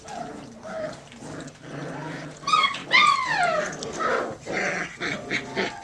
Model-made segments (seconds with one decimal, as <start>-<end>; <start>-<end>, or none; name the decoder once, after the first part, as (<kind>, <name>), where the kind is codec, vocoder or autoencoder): none